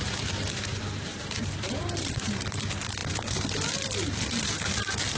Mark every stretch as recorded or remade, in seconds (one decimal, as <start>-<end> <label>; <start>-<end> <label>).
0.0-1.1 recorded; 1.1-2.6 remade; 2.6-5.2 recorded